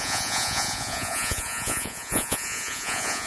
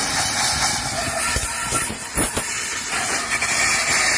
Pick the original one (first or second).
second